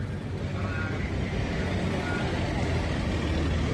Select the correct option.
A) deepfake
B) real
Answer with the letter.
B